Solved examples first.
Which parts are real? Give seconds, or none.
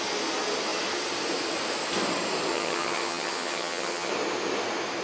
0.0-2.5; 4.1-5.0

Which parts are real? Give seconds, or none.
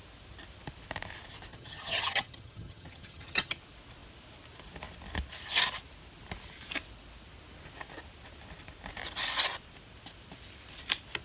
0.0-1.5; 3.6-11.2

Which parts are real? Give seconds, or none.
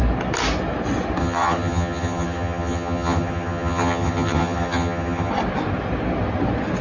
0.0-1.2; 5.3-6.8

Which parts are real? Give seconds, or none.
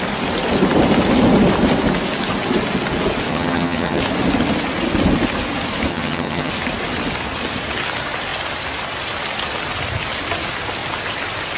0.0-3.3; 4.0-5.9; 6.5-11.6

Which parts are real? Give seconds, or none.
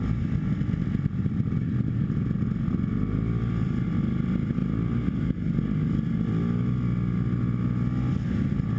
0.0-8.8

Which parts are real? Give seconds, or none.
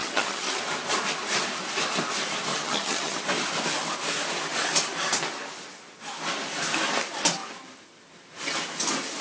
0.6-2.5; 3.2-9.2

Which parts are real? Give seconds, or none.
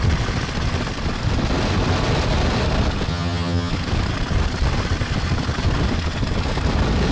0.0-3.1; 3.7-7.1